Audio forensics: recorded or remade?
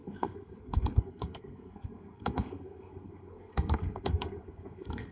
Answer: remade